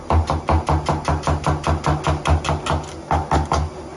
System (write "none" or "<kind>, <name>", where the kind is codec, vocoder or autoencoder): none